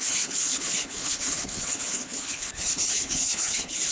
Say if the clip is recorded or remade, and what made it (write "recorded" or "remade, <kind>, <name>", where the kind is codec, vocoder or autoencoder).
remade, codec, HILCodec